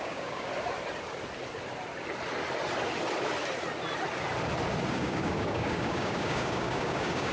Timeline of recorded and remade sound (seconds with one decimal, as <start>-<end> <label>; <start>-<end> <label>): 0.0-0.5 remade; 0.5-4.9 recorded; 4.9-7.3 remade